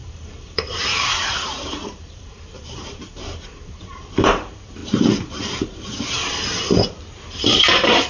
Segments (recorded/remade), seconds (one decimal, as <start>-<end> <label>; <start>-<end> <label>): 0.0-4.8 remade; 4.8-7.4 recorded; 7.4-8.1 remade

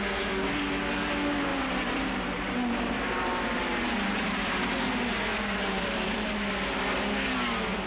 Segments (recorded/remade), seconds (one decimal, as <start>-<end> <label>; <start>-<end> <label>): 0.0-1.5 recorded; 1.5-4.5 remade; 4.5-5.3 recorded; 5.3-6.5 remade; 6.5-7.9 recorded